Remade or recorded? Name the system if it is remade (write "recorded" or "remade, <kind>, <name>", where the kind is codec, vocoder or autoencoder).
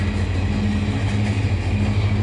recorded